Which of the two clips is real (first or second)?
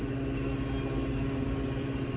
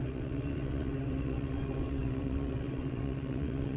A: first